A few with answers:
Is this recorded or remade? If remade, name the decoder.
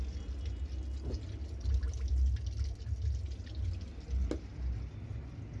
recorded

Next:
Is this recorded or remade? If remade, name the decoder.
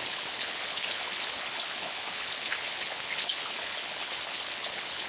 remade, codec, HILCodec